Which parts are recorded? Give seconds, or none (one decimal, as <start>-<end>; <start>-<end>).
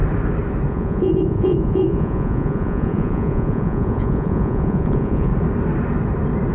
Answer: 0.0-0.7; 5.3-6.5